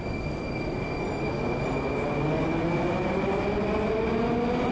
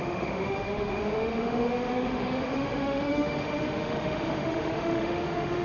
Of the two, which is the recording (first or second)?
first